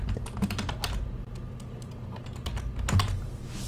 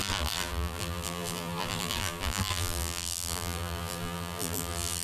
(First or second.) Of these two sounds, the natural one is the first